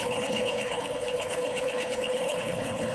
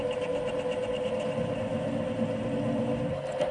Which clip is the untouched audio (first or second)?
second